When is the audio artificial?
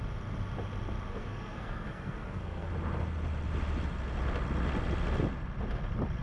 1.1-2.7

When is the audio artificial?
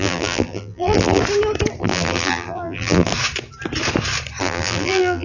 0.0-1.2; 1.8-3.1; 4.4-5.2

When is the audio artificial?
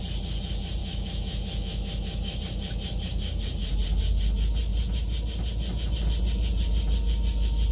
0.8-2.4